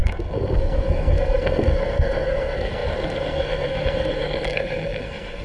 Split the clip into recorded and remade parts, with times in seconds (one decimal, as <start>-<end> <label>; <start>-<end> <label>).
0.0-5.4 remade

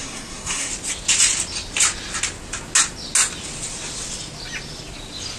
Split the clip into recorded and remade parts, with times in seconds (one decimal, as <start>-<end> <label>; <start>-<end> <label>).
0.0-0.7 remade; 0.7-5.4 recorded

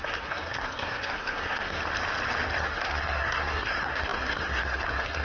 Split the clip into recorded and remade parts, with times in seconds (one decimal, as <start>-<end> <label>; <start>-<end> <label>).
0.0-1.8 remade; 1.8-2.6 recorded; 2.6-5.2 remade

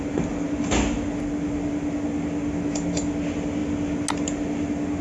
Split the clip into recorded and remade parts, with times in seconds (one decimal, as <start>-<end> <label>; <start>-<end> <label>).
0.0-5.0 recorded

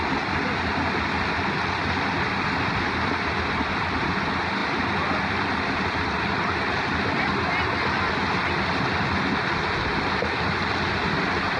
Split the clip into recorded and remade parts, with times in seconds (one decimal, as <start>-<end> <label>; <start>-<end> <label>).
0.0-11.6 recorded

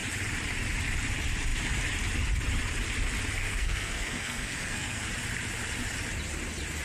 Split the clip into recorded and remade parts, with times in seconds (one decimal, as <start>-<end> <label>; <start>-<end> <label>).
0.0-3.4 recorded; 3.4-5.1 remade; 5.1-6.8 recorded

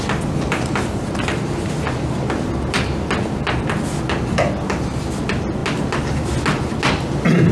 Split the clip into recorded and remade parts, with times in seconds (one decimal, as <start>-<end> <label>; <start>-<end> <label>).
0.0-7.5 recorded

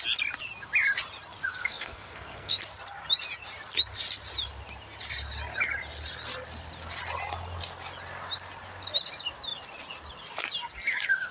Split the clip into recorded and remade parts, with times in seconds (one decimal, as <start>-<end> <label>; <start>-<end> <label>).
0.0-1.6 recorded; 1.6-2.6 remade; 2.6-11.3 recorded